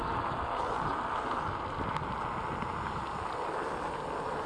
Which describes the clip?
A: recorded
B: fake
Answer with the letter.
A